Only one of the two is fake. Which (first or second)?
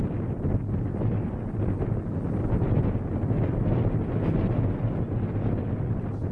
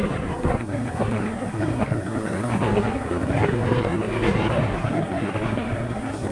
second